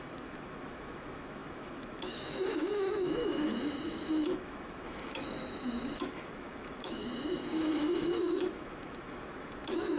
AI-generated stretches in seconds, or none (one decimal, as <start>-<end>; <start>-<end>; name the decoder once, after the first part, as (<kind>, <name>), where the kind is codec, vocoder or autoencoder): 0.0-10.0 (autoencoder, DAC-VAE)